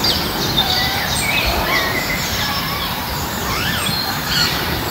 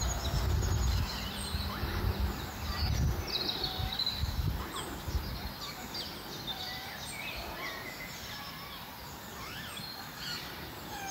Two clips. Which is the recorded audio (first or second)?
second